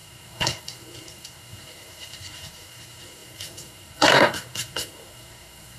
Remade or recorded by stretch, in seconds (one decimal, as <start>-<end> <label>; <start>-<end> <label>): 0.0-5.8 remade